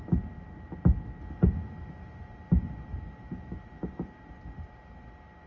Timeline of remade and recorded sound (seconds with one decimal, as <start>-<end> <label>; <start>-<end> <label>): 0.0-5.5 recorded